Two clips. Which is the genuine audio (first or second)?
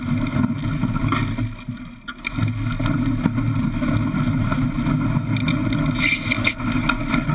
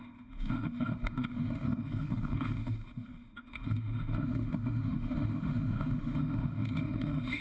first